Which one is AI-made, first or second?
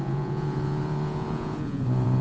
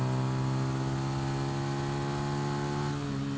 first